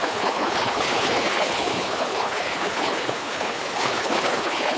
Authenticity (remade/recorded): remade